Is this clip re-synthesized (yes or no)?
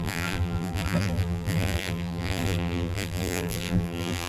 yes